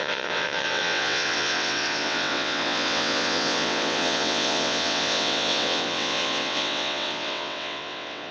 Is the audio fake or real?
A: fake